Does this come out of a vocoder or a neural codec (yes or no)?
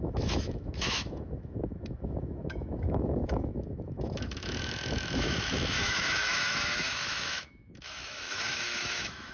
yes